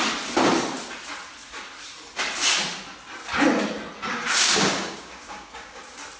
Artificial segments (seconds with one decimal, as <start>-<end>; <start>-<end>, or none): 4.1-5.8